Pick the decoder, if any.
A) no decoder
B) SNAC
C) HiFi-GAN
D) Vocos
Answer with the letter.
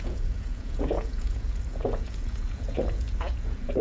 D